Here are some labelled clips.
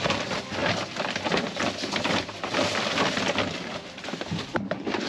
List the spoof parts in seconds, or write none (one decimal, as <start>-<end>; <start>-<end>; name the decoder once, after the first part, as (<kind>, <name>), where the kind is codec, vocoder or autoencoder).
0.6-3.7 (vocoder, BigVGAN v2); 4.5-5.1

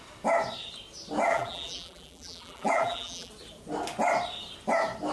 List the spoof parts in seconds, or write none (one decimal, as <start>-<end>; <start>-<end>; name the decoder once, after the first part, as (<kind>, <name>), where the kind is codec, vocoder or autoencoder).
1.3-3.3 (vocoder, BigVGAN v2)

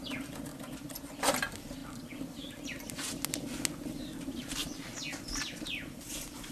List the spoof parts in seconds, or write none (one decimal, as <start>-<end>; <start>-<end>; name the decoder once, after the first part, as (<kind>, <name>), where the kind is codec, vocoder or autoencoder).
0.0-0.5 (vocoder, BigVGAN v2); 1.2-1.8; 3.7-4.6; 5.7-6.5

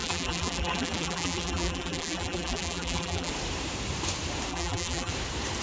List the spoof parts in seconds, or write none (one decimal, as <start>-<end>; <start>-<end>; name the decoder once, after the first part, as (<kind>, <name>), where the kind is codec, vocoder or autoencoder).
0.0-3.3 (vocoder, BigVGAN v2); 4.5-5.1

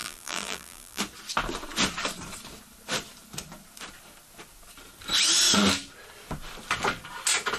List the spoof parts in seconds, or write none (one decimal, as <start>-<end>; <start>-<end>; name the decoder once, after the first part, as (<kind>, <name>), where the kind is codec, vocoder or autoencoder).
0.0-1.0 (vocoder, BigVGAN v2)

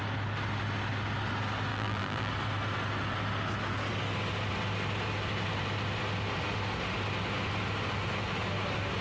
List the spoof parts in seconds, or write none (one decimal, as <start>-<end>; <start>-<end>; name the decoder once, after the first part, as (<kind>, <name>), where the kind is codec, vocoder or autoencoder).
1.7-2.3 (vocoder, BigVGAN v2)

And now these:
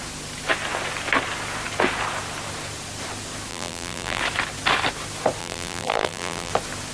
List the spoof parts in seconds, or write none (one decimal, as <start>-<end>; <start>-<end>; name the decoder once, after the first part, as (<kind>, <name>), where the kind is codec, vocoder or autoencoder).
3.5-4.2 (vocoder, BigVGAN v2); 5.4-6.5

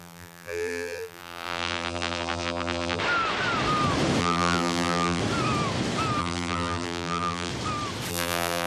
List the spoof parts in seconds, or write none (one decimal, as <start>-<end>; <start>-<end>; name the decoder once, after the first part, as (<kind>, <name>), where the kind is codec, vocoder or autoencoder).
0.0-3.0 (vocoder, BigVGAN v2); 4.2-5.2; 6.2-7.5; 8.1-8.7